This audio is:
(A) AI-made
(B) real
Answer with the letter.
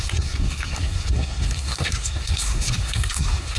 A